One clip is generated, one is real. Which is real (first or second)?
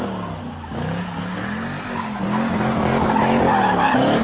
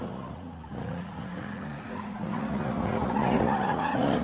first